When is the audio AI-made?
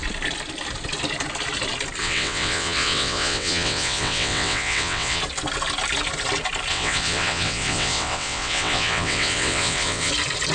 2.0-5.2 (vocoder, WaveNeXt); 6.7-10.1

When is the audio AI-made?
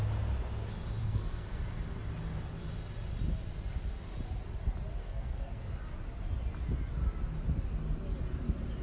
1.0-1.6 (codec, SNAC); 5.0-5.7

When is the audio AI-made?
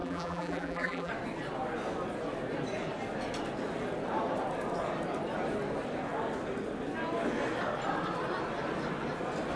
0.0-1.1 (vocoder, BigVGAN v2)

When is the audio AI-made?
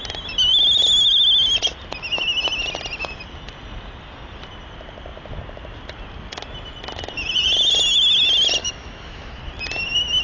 8.6-9.4 (autoencoder, DAC-VAE)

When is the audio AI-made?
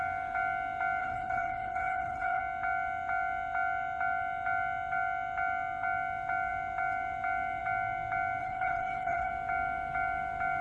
1.0-2.4 (codec, HILCodec); 8.4-9.3